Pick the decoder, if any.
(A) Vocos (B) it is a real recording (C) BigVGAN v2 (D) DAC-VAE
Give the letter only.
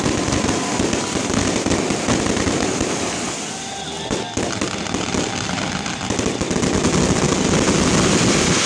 B